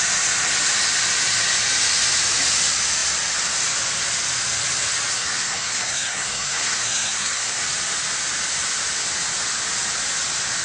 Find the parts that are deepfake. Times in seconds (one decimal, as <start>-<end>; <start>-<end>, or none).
5.1-7.6